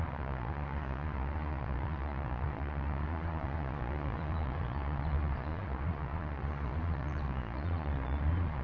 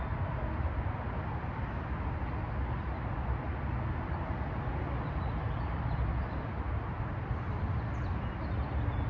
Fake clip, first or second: first